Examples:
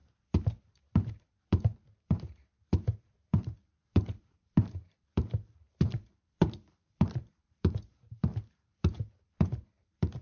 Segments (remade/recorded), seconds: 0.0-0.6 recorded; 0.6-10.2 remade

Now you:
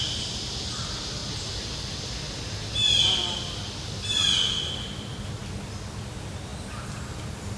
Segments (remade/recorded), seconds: 0.0-7.6 recorded

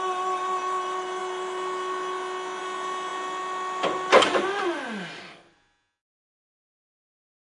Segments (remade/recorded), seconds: 0.0-7.6 recorded

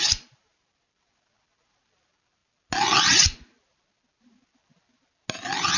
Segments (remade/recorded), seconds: 0.0-5.8 recorded

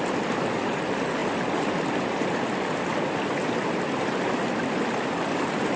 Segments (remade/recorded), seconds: 0.0-5.8 recorded

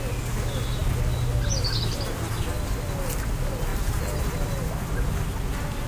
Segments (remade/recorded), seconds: 0.0-3.7 recorded; 3.7-4.7 remade; 4.7-5.9 recorded